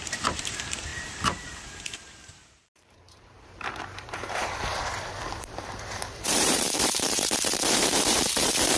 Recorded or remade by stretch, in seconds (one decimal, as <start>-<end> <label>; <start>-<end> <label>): 0.0-8.8 remade